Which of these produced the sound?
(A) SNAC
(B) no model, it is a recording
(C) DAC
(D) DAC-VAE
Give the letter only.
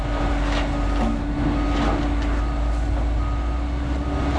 B